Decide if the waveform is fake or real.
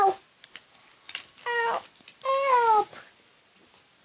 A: real